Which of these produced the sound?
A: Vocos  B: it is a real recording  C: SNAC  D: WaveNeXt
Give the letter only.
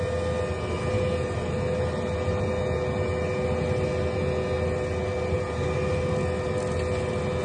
B